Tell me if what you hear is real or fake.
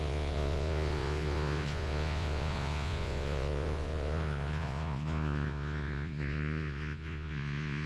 fake